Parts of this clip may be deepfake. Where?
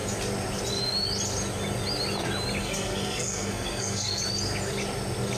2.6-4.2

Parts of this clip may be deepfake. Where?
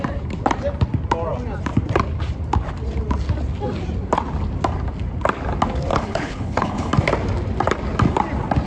5.9-6.9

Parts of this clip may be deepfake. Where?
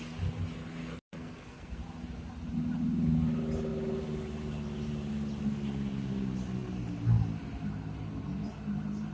0.8-1.8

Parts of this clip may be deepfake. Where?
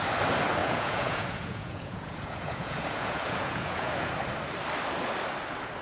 0.6-4.1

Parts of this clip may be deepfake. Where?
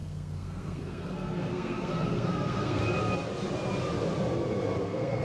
0.0-2.8; 4.8-5.2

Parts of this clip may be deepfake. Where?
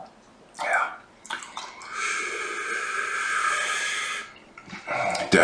none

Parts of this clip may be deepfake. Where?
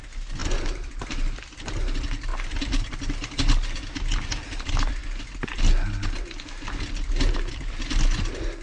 0.4-0.9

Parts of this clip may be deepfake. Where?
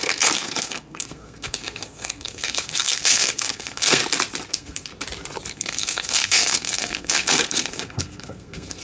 0.0-4.0; 4.5-4.9; 5.5-8.8